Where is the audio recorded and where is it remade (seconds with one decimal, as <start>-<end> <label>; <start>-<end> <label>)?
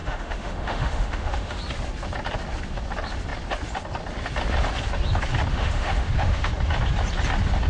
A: 0.0-1.6 remade; 1.6-5.5 recorded; 5.5-6.5 remade; 6.5-7.7 recorded